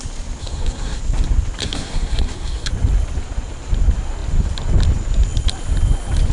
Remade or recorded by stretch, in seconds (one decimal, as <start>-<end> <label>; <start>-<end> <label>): 0.0-0.4 recorded; 0.4-1.0 remade; 1.0-1.6 recorded; 1.6-2.7 remade; 2.7-6.3 recorded